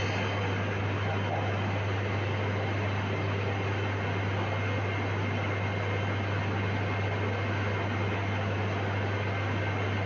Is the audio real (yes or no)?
yes